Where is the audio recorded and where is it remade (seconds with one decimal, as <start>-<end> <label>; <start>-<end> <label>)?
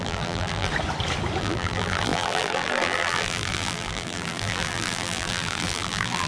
0.0-0.7 remade; 0.7-1.4 recorded; 1.4-6.3 remade